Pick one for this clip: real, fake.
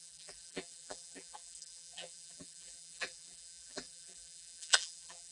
fake